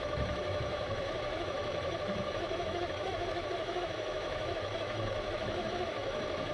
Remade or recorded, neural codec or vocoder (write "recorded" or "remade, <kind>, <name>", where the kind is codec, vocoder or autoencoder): remade, autoencoder, DAC-VAE